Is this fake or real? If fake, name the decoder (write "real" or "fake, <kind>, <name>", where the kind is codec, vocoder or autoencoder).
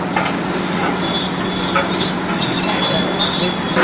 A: real